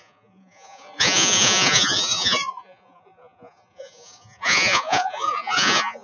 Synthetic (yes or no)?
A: yes